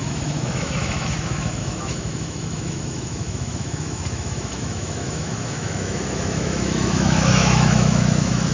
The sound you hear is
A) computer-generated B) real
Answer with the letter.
A